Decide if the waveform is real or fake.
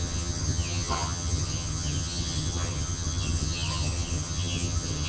fake